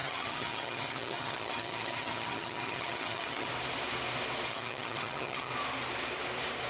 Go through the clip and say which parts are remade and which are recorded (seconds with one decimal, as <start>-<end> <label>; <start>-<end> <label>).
0.0-3.5 remade; 3.5-4.5 recorded; 4.5-5.5 remade; 5.5-6.7 recorded